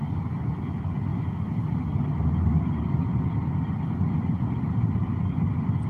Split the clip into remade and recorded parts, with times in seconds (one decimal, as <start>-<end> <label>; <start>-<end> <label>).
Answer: 0.0-5.9 recorded